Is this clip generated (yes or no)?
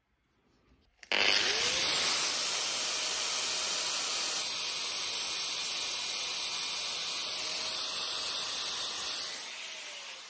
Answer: no